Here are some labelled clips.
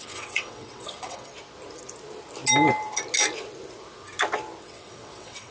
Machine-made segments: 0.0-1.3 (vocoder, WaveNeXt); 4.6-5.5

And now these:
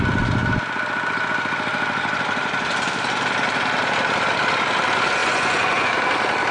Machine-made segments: 5.2-5.9 (vocoder, Vocos)

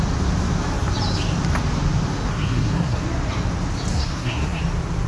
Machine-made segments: 2.3-3.0 (codec, SNAC); 3.9-4.6

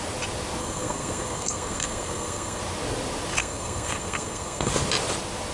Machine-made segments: 0.6-2.6 (codec, SNAC); 3.4-4.7

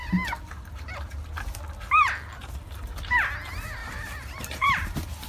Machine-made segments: 3.8-5.3 (vocoder, BigVGAN v2)